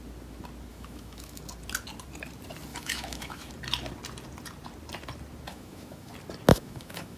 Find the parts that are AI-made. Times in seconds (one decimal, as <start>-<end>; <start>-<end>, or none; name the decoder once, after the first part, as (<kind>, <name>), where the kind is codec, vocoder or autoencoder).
0.7-1.4 (autoencoder, DAC-VAE); 2.7-3.5; 5.5-6.1; 6.5-7.2